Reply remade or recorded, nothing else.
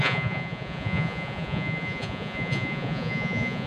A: remade